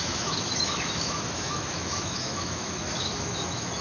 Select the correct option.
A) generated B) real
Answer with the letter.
A